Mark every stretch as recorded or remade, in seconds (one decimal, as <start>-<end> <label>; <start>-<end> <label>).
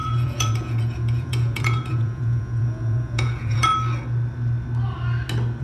0.0-3.7 remade; 3.7-5.6 recorded